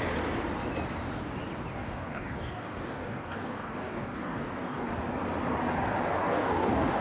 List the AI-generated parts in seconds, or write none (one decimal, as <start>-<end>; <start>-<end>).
1.8-4.9; 6.2-7.0